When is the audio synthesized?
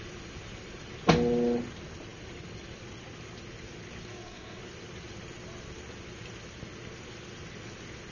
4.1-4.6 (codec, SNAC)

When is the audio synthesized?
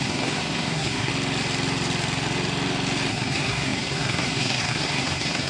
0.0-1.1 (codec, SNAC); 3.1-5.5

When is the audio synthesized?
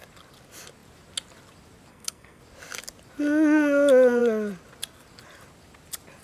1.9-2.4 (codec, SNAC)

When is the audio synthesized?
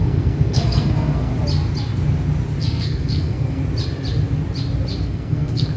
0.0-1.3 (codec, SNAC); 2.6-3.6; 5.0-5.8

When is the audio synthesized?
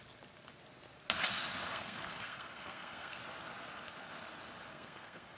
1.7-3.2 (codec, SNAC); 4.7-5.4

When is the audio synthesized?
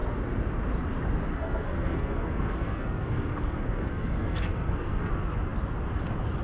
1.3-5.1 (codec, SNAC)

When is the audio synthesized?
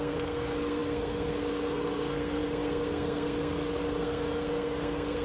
0.0-5.2 (codec, SNAC)